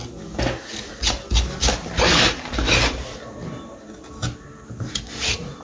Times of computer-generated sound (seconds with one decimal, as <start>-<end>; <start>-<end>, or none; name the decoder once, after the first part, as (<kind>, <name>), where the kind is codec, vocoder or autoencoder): 1.6-5.0 (vocoder, BigVGAN v2)